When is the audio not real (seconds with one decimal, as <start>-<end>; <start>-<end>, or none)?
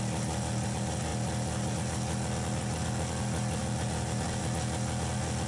none